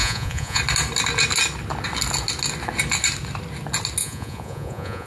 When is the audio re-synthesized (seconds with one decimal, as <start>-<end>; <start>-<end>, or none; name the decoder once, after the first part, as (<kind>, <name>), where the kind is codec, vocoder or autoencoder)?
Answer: 0.0-0.6 (vocoder, Vocos); 4.0-5.1